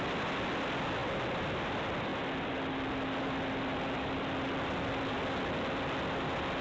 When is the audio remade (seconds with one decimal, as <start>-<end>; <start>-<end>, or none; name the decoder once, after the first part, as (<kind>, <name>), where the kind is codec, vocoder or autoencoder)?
none